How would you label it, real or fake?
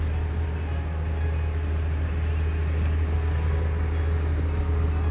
real